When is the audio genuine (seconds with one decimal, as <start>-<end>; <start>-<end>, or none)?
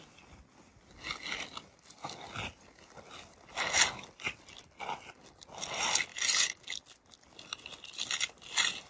0.0-6.1; 6.7-8.9